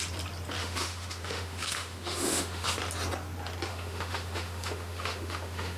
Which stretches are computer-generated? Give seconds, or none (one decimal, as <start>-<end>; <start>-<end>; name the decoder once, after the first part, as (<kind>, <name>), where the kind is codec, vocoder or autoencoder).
0.6-2.8 (autoencoder, DAC-VAE); 3.7-5.8